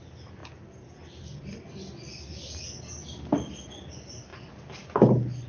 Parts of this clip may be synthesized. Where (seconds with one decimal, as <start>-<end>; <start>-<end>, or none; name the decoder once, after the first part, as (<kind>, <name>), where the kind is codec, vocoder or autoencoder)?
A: none